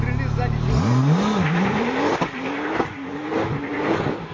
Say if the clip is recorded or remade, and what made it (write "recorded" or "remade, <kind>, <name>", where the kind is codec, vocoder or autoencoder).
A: recorded